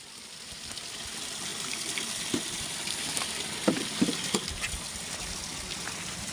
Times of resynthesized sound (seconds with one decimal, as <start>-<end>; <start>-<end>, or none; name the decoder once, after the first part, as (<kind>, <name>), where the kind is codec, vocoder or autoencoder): none